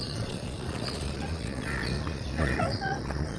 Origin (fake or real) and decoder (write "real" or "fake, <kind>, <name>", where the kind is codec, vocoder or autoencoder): fake, vocoder, Vocos